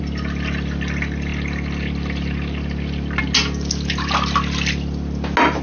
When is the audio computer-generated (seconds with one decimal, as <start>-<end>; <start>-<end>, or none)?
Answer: none

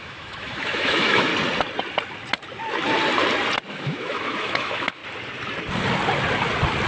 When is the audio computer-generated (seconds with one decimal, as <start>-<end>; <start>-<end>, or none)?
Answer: 0.0-1.3; 3.7-5.0

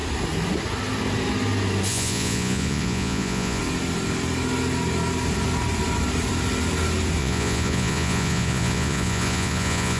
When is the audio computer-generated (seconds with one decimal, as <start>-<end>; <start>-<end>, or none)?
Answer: 1.9-3.6; 7.2-10.0

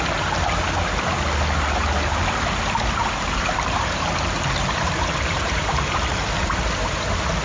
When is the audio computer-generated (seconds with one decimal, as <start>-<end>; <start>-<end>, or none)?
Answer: 3.0-6.0

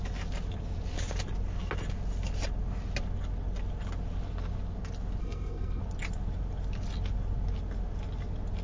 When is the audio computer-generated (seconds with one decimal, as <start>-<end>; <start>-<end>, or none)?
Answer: 5.2-5.8

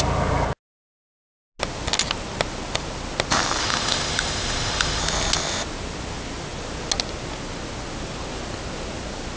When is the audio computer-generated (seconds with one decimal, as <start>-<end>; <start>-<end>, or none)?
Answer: 3.6-5.0